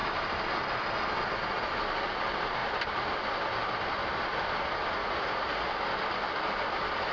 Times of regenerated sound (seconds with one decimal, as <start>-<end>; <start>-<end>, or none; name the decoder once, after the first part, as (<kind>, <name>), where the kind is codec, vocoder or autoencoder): 5.0-5.7 (vocoder, Vocos)